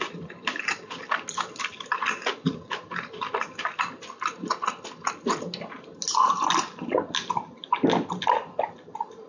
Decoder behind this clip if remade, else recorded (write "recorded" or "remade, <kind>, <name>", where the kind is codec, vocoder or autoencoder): recorded